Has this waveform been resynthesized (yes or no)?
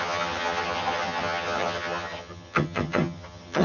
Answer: yes